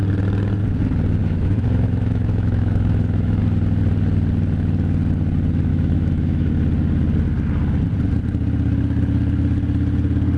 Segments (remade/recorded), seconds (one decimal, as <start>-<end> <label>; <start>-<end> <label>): 0.0-1.2 recorded; 1.2-3.4 remade; 3.4-5.7 recorded; 5.7-6.5 remade; 6.5-10.4 recorded